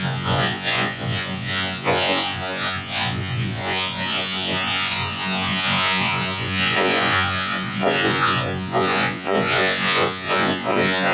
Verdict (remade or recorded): remade